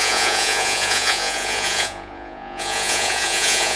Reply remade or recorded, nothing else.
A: remade